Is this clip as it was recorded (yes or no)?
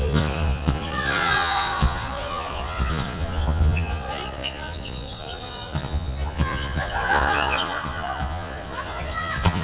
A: no